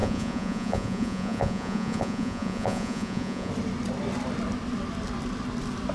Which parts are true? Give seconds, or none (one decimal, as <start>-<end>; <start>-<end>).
3.5-5.9